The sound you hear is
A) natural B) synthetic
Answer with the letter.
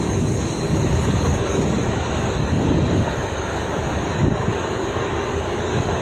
B